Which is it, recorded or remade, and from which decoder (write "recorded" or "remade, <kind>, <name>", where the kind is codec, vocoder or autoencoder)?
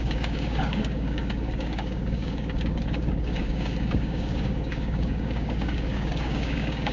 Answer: remade, codec, DAC